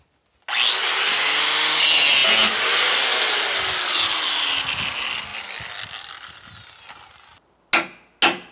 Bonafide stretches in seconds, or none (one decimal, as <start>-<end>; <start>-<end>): 0.0-8.5

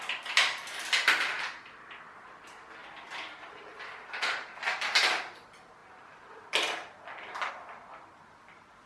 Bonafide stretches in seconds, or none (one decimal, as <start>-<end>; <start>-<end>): 0.0-8.9

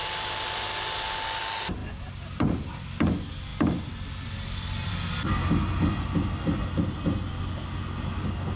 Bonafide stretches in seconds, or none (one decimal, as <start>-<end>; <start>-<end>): 0.0-8.6

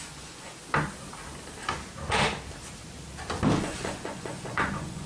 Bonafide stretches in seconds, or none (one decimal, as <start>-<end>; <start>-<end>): 0.5-3.6